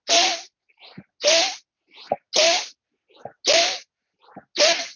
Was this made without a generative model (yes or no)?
yes